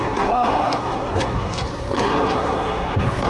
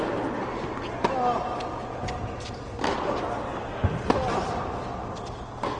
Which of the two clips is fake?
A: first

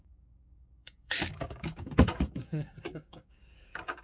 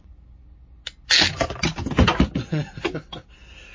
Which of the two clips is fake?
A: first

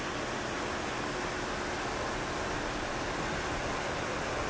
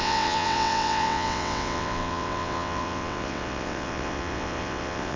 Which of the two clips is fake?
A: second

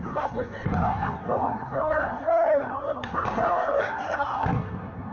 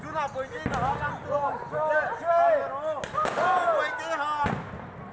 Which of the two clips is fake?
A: first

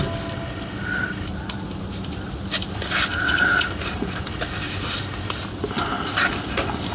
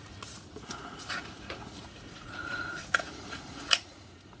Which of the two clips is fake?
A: second